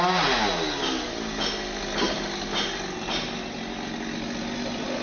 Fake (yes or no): no